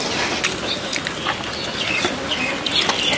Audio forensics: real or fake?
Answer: real